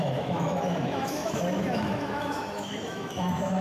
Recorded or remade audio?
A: remade